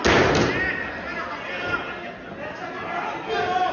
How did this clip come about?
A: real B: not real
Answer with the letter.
A